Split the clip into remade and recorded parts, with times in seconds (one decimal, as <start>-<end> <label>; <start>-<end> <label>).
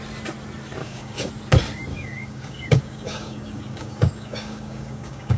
0.0-0.8 recorded; 0.8-1.3 remade; 1.3-1.9 recorded; 1.9-5.4 remade